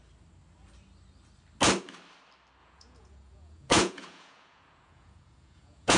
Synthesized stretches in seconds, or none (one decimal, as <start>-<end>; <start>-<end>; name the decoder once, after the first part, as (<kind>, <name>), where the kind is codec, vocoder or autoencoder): 2.6-6.0 (vocoder, Vocos)